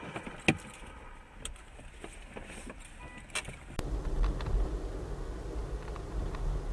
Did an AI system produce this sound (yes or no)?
no